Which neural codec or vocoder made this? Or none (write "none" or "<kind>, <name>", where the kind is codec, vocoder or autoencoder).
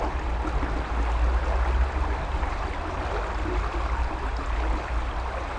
none